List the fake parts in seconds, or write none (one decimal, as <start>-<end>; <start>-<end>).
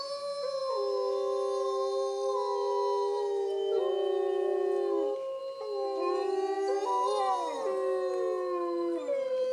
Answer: none